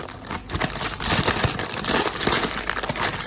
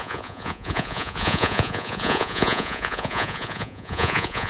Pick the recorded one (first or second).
first